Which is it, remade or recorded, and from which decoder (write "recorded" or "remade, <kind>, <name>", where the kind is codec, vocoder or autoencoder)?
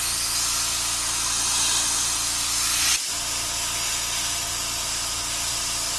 recorded